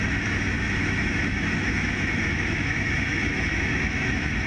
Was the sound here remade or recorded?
remade